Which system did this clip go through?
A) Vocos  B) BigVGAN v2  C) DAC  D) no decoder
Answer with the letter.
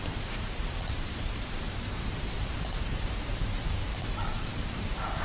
B